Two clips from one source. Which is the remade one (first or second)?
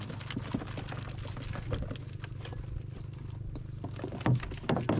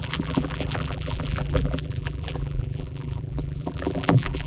second